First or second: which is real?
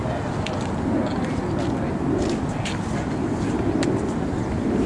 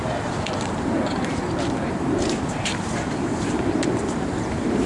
first